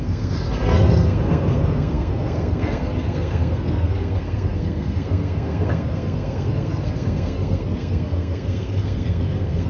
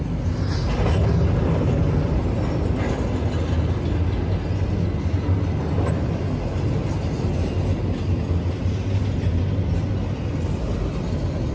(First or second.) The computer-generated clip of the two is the first